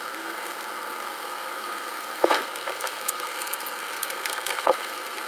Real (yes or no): no